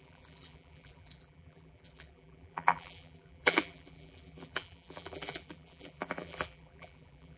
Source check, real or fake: fake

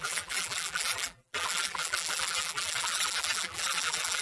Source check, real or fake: fake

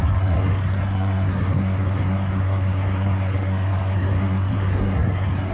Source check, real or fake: fake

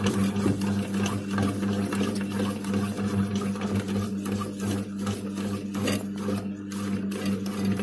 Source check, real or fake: real